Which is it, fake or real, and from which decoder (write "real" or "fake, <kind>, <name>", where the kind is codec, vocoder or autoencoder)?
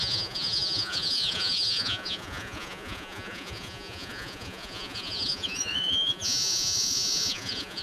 fake, vocoder, Vocos